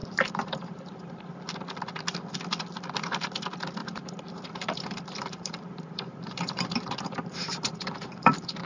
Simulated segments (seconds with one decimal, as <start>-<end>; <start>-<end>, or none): 0.0-1.2; 3.8-8.7